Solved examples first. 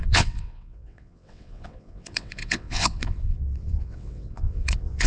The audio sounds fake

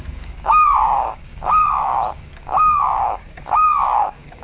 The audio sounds fake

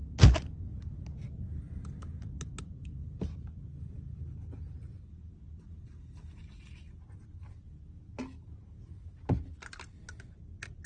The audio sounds real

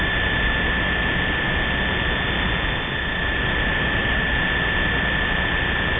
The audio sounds real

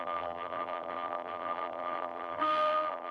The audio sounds fake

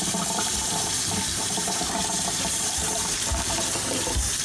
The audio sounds fake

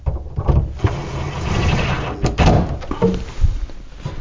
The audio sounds real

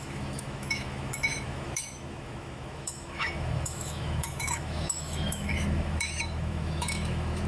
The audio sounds fake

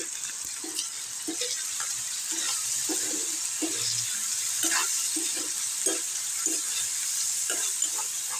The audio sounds real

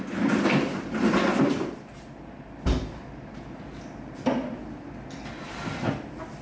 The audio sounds real